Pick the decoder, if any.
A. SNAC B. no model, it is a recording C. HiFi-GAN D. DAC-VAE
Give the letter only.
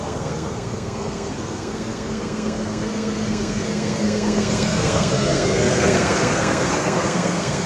A